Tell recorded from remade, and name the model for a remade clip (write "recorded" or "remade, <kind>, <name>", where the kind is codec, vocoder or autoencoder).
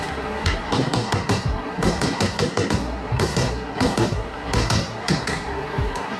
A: remade, codec, SNAC